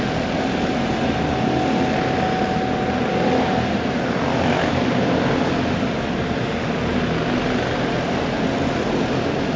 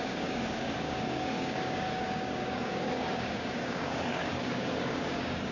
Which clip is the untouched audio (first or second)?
first